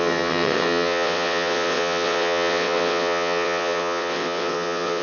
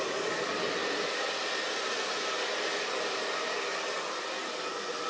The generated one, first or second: first